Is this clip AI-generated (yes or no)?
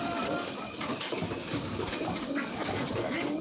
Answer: yes